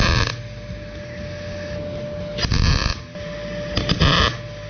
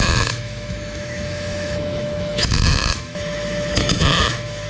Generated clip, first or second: second